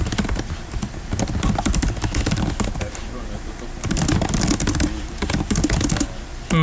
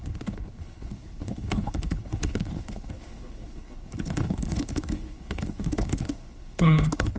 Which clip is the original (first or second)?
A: first